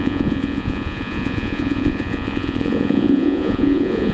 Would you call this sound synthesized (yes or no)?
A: yes